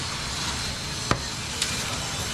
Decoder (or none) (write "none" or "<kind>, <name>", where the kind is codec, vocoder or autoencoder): none